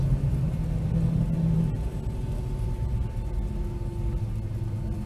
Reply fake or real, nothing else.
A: real